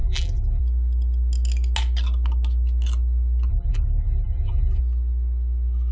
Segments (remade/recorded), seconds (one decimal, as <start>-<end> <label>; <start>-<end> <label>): 0.0-0.6 remade; 0.6-3.5 recorded; 3.5-4.8 remade; 4.8-5.9 recorded